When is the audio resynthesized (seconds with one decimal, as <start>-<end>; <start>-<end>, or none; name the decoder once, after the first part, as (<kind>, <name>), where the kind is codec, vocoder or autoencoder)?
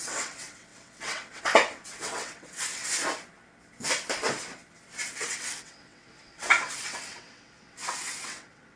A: 0.0-2.9 (vocoder, WaveNeXt); 5.1-8.8